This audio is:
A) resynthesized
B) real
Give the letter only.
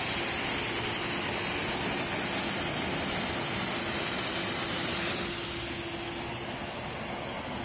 B